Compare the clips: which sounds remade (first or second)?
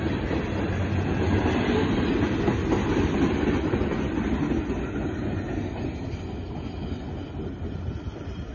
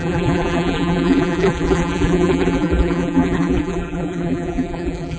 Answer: second